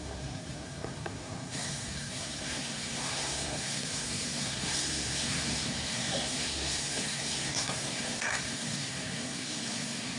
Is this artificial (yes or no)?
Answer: yes